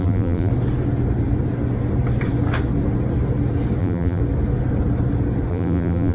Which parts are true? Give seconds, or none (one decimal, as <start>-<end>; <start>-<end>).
0.5-3.8; 4.2-5.5